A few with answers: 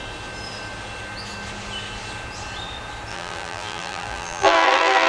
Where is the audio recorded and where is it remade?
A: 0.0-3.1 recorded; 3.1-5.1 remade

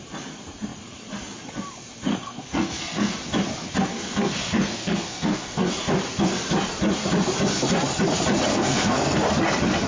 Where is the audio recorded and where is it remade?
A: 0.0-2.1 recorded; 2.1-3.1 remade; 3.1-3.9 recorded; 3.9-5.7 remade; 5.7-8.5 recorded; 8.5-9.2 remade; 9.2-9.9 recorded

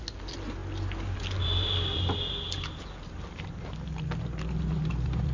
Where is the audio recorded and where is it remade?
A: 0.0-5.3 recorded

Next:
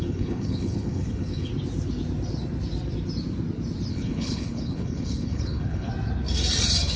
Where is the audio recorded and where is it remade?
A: 0.0-1.5 remade; 1.5-3.9 recorded; 3.9-5.9 remade; 5.9-7.0 recorded

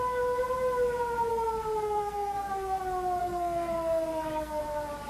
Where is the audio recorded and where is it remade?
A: 0.0-1.3 recorded; 1.3-2.8 remade; 2.8-3.2 recorded; 3.2-4.6 remade; 4.6-5.1 recorded

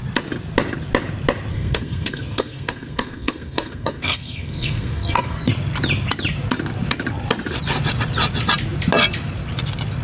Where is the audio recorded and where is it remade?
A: 0.0-1.5 recorded; 1.5-5.5 remade; 5.5-10.0 recorded